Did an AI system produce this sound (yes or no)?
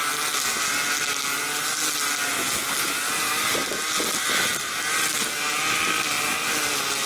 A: no